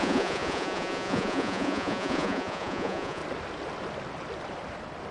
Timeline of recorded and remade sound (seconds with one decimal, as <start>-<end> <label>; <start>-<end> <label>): 0.0-3.2 remade; 3.2-5.1 recorded